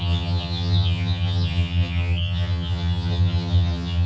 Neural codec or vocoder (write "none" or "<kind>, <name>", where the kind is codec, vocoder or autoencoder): vocoder, HiFi-GAN